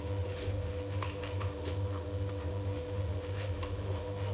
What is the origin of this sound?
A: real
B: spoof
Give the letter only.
B